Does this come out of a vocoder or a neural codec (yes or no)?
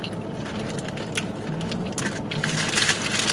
no